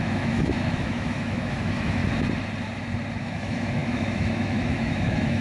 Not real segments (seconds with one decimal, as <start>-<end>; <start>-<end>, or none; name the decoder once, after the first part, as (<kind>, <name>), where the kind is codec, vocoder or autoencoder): 0.0-2.0 (autoencoder, DAC-VAE); 3.2-5.4